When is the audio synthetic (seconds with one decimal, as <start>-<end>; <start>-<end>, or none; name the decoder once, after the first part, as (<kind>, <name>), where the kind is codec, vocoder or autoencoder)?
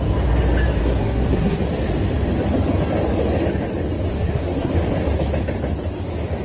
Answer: 0.8-1.6 (codec, SNAC); 4.1-4.7